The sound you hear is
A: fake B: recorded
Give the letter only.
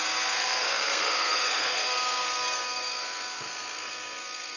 A